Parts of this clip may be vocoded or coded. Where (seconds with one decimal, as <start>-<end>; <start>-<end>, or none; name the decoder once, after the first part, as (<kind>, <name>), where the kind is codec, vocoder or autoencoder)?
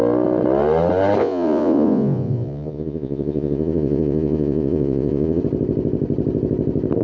1.2-5.4 (vocoder, Vocos)